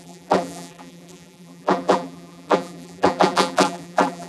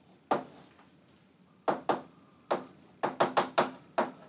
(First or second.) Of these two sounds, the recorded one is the second